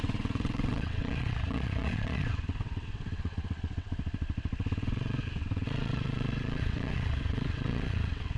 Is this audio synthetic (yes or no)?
yes